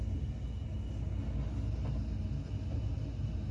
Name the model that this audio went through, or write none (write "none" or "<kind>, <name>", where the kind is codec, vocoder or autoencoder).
none